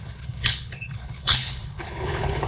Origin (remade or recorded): remade